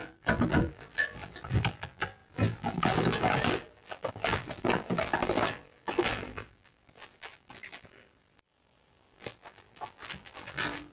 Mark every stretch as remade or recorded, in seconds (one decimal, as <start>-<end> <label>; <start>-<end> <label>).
0.0-10.9 remade

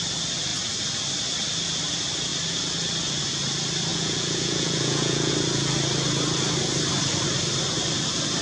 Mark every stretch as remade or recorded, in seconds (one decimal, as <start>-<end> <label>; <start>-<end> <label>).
0.0-3.9 recorded; 3.9-5.3 remade; 5.3-8.4 recorded